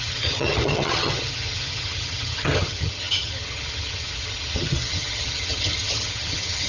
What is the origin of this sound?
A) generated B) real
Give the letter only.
A